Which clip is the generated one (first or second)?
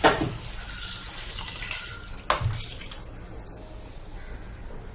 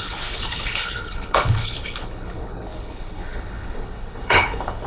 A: second